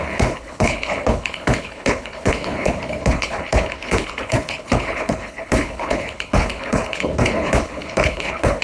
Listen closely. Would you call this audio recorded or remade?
remade